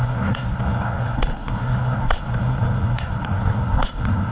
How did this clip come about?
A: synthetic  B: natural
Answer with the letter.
A